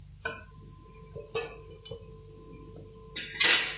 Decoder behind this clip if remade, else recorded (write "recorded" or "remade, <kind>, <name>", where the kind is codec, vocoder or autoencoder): recorded